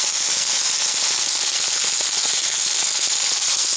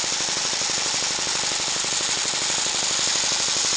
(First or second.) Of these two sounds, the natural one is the second